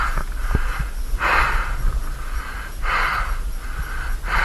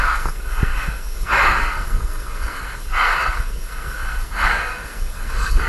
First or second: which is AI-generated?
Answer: second